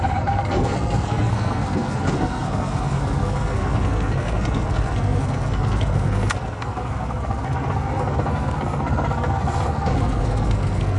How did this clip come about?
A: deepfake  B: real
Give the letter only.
A